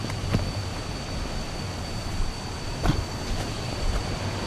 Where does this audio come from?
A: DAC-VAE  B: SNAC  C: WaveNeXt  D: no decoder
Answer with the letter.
D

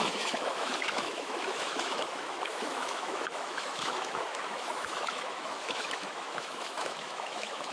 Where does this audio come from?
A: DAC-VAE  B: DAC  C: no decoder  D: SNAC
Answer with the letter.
A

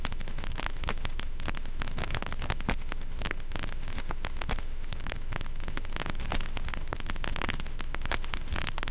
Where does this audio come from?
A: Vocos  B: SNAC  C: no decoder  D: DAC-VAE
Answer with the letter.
D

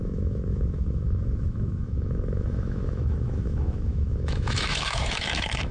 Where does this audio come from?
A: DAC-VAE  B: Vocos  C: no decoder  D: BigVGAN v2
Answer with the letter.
A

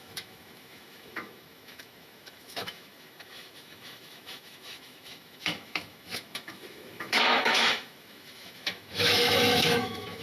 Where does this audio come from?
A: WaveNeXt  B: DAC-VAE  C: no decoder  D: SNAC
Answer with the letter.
B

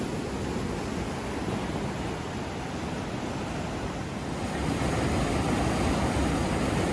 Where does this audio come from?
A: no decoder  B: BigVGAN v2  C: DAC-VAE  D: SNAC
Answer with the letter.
A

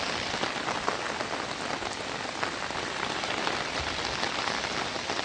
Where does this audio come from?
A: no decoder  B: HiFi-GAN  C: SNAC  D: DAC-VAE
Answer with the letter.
A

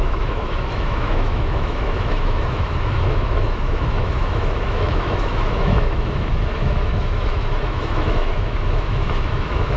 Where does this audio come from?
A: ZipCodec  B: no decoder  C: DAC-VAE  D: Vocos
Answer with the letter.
C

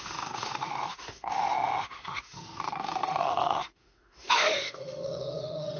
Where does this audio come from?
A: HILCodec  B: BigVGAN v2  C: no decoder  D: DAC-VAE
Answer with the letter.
D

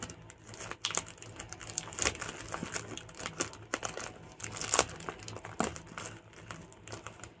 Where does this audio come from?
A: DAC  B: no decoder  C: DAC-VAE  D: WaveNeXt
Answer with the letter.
B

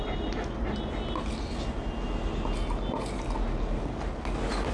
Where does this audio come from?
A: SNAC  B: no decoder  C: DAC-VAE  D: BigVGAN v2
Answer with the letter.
B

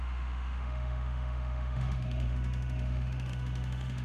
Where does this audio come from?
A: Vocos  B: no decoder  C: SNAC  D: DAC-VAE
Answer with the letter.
D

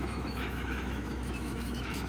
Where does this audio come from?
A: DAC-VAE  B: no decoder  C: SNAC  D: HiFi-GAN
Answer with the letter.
A